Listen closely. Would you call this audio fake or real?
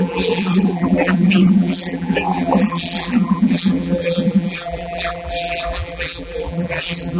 fake